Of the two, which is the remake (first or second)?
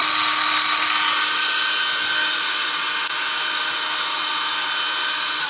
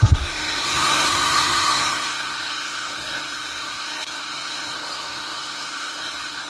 second